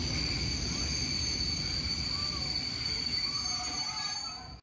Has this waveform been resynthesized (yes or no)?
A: no